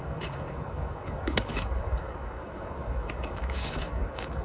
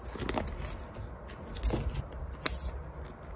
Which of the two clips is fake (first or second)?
first